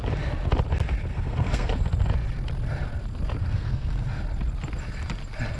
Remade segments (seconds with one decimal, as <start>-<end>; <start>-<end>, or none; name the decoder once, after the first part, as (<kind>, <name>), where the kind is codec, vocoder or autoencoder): 1.1-1.7 (codec, SNAC); 3.4-4.2